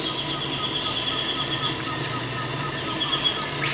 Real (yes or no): yes